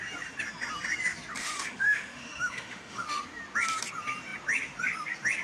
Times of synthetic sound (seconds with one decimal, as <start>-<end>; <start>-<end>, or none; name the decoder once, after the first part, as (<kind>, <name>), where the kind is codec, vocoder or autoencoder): 1.4-3.2 (autoencoder, DAC-VAE)